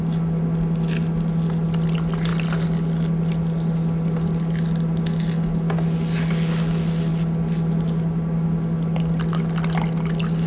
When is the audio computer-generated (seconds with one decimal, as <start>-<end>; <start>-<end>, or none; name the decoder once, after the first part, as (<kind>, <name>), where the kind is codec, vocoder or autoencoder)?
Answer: none